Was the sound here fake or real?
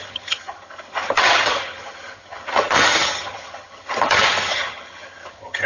fake